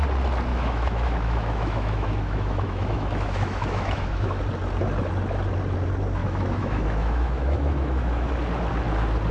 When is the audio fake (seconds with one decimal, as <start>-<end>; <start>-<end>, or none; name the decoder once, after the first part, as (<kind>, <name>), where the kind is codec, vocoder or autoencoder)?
0.5-4.4 (autoencoder, DAC-VAE); 6.2-8.3

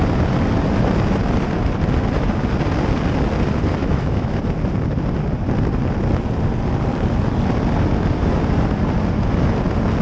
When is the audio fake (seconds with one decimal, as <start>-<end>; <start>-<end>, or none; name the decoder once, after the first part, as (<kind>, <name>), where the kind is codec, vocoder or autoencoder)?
3.8-4.4 (autoencoder, DAC-VAE)

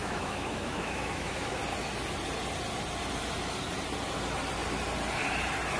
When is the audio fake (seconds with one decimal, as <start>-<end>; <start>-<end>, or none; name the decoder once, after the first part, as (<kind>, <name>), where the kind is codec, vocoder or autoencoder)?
0.0-1.6 (autoencoder, DAC-VAE)

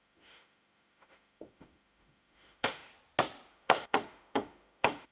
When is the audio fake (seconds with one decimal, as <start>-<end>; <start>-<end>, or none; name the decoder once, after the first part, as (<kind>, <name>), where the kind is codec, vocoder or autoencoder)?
0.0-2.9 (autoencoder, DAC-VAE); 3.5-5.1

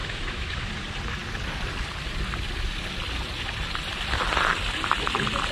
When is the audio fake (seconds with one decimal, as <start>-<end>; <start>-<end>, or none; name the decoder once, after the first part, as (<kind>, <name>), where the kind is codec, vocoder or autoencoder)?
0.0-0.7 (autoencoder, DAC-VAE)

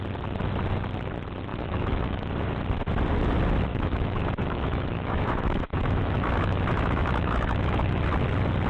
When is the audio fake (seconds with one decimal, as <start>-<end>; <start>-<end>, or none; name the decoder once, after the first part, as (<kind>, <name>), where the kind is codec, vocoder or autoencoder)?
1.5-2.3 (autoencoder, DAC-VAE); 3.7-8.0

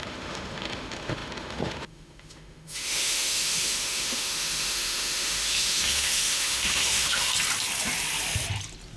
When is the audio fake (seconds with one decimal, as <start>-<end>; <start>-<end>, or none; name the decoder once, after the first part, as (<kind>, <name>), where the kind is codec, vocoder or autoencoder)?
0.0-7.3 (autoencoder, DAC-VAE)

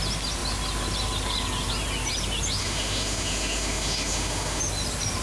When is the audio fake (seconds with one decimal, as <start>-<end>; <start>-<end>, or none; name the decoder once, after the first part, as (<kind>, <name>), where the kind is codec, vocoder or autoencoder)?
2.6-4.6 (autoencoder, DAC-VAE)